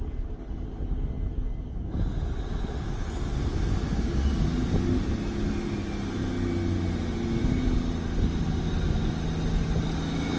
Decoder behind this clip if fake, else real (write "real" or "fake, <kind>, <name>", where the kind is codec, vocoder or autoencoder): real